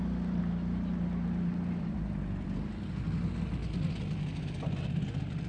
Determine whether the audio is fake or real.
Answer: real